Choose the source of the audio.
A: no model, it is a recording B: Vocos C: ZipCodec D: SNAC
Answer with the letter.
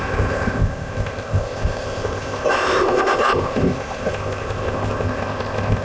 C